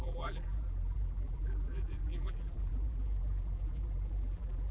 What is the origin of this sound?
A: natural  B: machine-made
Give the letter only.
B